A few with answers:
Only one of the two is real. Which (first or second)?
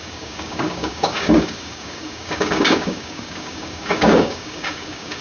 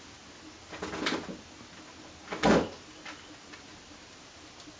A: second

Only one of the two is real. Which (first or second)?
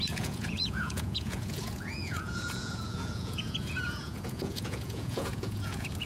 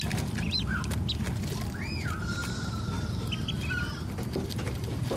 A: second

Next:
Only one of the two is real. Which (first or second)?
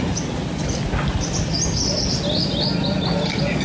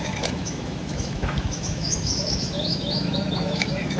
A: first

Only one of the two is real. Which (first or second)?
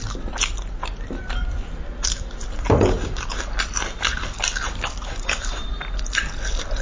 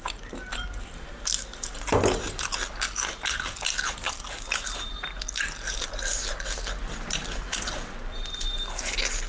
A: second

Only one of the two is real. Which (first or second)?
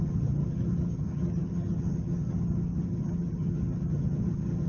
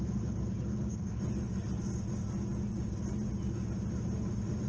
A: second